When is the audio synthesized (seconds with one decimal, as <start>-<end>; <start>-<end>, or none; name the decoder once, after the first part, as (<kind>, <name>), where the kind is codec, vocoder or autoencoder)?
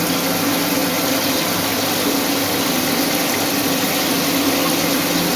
none